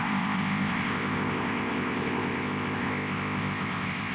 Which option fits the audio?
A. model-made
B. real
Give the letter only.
A